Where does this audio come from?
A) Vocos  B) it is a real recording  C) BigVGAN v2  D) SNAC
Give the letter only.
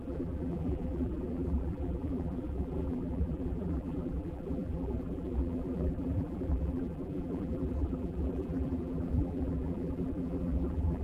C